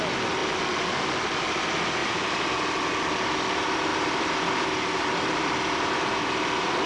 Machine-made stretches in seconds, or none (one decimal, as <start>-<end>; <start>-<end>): 2.0-2.9; 3.9-5.0